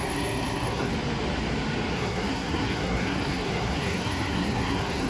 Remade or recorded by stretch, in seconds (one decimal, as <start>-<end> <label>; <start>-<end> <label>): 0.0-0.9 remade; 0.9-1.9 recorded; 1.9-5.1 remade